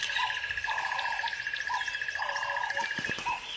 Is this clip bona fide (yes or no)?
yes